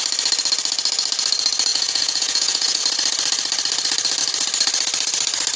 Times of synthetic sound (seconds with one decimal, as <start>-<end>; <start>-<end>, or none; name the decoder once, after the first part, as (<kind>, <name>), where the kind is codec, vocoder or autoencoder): 1.7-2.8 (vocoder, Vocos)